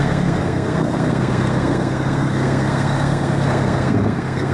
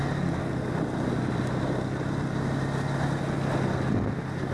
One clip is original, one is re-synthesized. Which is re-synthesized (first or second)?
first